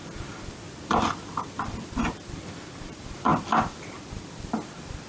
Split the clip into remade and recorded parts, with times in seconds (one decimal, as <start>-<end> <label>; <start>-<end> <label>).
0.0-5.1 remade